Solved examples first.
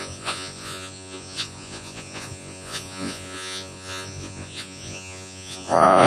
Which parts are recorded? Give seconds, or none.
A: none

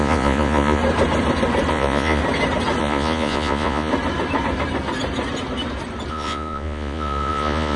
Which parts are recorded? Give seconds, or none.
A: 0.8-1.7; 2.2-2.8; 3.9-6.1

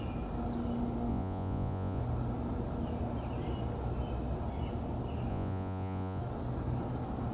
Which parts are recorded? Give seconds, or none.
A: 0.0-1.1; 2.0-5.3; 6.2-7.3

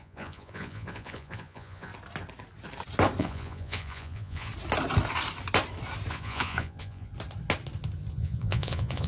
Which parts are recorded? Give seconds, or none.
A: 1.9-3.2; 4.5-6.1; 7.1-8.1

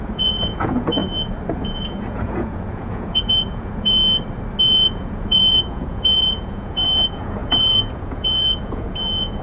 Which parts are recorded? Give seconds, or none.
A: 1.0-1.5; 4.0-4.6